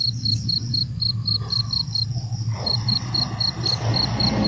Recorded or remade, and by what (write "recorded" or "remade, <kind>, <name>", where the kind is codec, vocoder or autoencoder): recorded